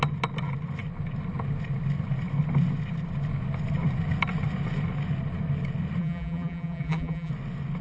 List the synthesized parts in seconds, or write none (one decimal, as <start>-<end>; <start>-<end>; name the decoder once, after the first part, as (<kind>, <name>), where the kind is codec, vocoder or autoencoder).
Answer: 6.0-7.3 (vocoder, BigVGAN v2)